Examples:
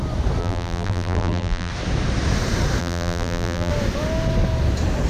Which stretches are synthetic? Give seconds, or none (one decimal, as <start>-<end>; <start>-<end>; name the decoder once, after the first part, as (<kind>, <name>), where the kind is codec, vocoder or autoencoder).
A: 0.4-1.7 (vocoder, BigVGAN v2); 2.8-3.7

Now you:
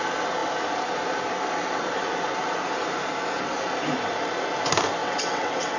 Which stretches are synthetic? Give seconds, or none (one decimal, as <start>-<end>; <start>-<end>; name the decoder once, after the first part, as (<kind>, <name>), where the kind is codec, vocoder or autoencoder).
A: 5.0-5.8 (vocoder, WaveNeXt)

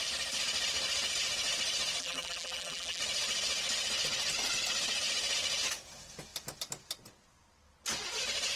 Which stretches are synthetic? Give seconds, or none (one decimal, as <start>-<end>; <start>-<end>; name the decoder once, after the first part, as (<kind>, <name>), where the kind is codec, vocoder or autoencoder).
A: 2.0-3.0 (vocoder, BigVGAN v2)

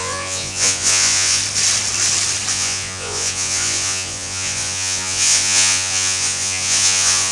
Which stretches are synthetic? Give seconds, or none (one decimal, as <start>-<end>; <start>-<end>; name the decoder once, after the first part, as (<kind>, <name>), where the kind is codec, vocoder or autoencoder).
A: 0.0-1.4 (vocoder, Vocos); 2.5-7.3

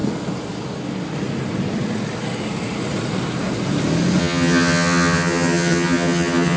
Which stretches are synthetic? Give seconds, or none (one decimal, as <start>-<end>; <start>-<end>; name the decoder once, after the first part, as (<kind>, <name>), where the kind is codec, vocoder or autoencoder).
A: 4.2-6.6 (vocoder, HiFi-GAN)

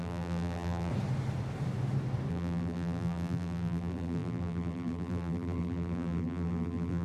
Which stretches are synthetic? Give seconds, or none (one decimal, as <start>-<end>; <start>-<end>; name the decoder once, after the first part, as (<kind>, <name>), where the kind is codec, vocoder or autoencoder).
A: 0.0-0.9 (vocoder, BigVGAN v2); 2.3-7.0

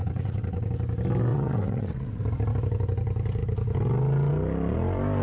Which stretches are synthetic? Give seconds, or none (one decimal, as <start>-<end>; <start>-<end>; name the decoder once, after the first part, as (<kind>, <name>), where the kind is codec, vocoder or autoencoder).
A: 0.0-0.7 (vocoder, WaveNeXt); 1.3-2.2